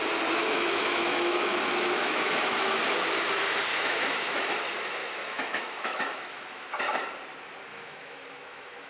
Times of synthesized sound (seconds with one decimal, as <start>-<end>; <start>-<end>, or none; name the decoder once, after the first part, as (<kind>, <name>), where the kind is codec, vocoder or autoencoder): 0.4-2.8 (autoencoder, DAC-VAE); 3.7-4.5; 5.0-6.7; 7.7-8.9